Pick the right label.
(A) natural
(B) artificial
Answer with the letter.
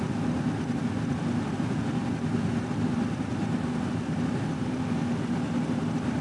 A